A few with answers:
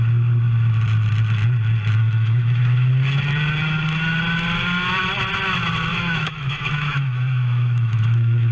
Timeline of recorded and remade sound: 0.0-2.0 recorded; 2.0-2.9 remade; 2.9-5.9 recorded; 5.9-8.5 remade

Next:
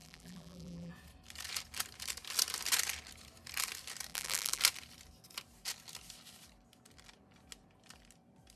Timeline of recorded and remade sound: 0.0-0.9 remade; 0.9-4.1 recorded; 4.1-4.6 remade; 4.6-8.6 recorded

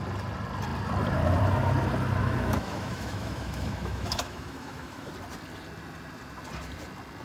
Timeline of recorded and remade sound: 0.0-2.2 recorded; 2.2-5.1 remade; 5.1-7.2 recorded

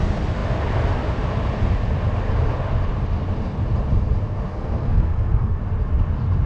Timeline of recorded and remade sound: 0.0-4.5 recorded; 4.5-5.6 remade; 5.6-6.5 recorded

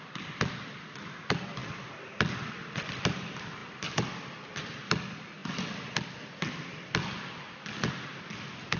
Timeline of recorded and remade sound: 0.0-8.8 recorded

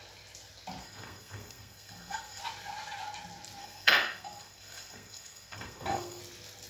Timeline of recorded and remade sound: 0.0-0.8 recorded; 0.8-2.4 remade; 2.4-3.6 recorded; 3.6-6.2 remade; 6.2-6.7 recorded

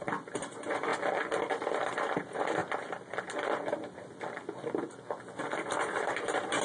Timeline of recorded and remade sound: 0.0-0.9 remade; 0.9-1.5 recorded; 1.5-2.6 remade; 2.6-5.3 recorded; 5.3-6.6 remade